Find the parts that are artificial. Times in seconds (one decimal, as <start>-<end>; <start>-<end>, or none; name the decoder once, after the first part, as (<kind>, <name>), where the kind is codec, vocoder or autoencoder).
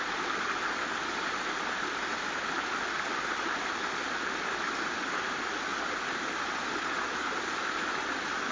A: none